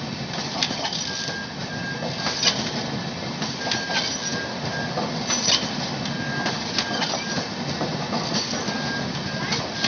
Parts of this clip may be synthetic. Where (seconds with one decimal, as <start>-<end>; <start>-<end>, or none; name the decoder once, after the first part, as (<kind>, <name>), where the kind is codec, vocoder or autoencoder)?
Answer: none

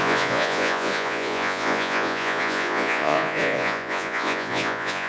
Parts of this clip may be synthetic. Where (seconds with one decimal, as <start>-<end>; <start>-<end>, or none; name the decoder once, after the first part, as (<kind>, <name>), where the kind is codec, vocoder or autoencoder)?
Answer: 0.0-5.1 (vocoder, Vocos)

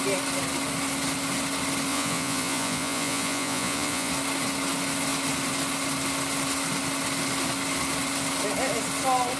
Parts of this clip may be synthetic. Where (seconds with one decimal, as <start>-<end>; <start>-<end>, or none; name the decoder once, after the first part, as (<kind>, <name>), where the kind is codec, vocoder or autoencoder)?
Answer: 1.9-4.1 (vocoder, Vocos)

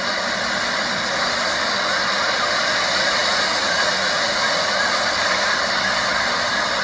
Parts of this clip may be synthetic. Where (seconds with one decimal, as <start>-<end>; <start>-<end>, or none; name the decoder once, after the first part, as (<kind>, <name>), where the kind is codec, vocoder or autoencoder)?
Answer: 3.2-4.7 (vocoder, Vocos)

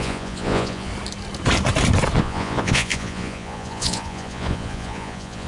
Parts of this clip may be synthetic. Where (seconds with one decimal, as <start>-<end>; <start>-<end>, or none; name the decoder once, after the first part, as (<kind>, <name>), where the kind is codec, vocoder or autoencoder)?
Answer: 0.0-0.9 (vocoder, Vocos); 2.2-5.5

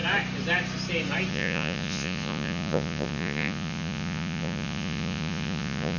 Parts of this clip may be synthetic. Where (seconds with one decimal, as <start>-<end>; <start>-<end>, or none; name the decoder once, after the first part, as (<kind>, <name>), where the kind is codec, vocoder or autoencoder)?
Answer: 1.3-6.0 (vocoder, Vocos)